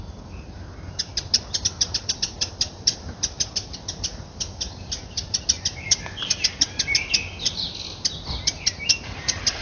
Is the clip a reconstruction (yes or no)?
no